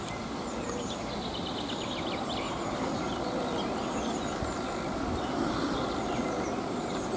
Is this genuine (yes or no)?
yes